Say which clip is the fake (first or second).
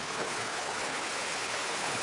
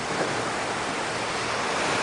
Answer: first